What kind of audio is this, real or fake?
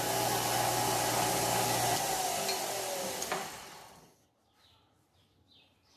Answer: real